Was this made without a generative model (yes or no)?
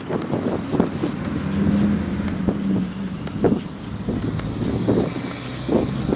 yes